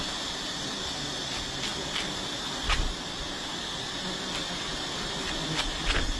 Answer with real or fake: real